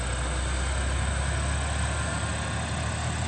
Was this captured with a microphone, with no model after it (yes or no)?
yes